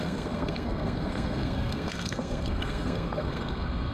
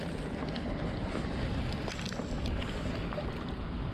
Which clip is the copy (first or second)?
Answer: first